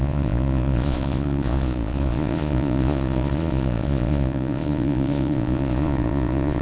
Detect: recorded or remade remade